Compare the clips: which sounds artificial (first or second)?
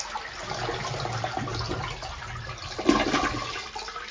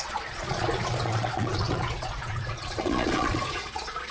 second